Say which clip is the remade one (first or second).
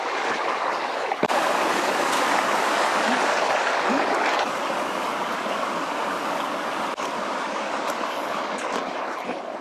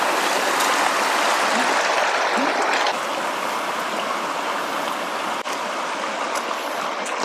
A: first